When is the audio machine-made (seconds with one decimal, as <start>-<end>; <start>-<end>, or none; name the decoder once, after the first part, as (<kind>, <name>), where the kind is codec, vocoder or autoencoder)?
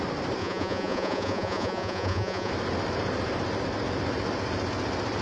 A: 0.4-2.5 (vocoder, Vocos)